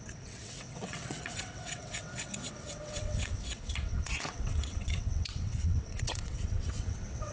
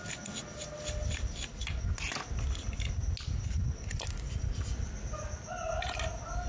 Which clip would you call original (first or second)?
second